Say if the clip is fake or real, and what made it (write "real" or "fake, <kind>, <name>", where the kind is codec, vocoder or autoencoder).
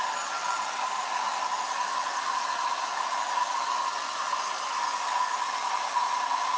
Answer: real